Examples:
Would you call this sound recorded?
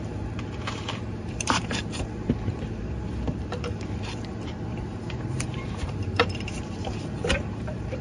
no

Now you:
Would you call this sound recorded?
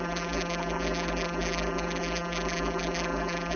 no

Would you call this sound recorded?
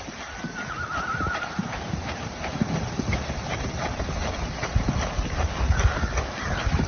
no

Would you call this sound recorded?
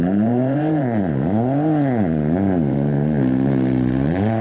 no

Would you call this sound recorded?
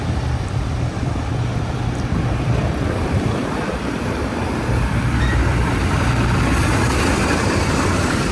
no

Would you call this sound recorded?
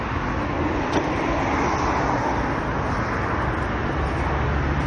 yes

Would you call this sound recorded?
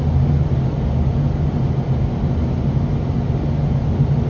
yes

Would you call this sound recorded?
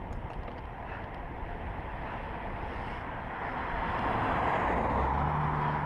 yes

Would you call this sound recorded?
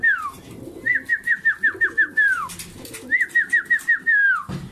yes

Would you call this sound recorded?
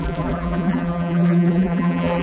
no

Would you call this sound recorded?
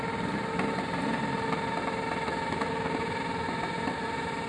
yes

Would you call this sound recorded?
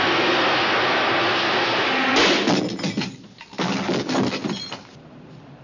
yes